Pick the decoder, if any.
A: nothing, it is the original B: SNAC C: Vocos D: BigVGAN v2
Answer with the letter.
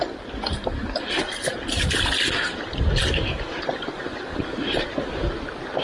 A